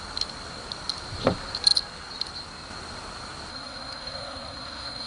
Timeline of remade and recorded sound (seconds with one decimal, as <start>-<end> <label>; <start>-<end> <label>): 0.0-3.5 recorded; 3.5-5.1 remade